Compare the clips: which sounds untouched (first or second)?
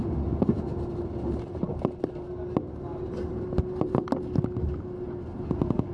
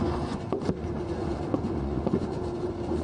first